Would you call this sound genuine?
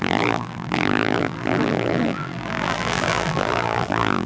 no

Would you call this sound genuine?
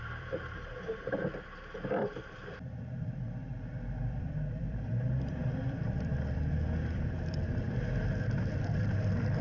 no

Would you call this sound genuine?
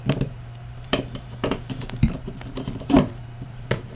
no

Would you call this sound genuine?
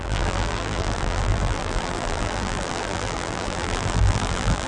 no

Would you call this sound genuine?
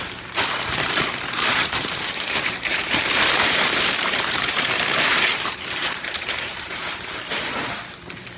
no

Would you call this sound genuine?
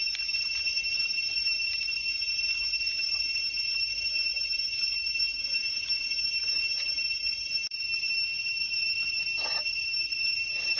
no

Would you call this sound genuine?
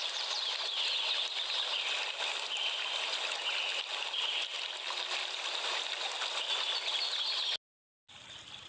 yes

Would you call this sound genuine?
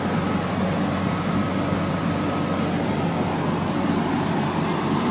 yes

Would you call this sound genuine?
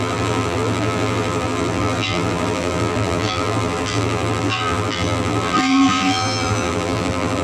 no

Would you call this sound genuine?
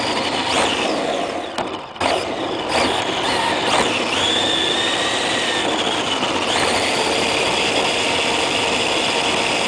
yes